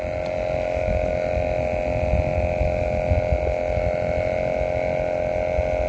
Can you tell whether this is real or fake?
real